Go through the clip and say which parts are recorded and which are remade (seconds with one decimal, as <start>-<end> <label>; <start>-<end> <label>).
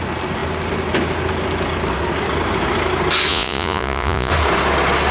0.0-3.3 recorded; 3.3-4.3 remade; 4.3-5.1 recorded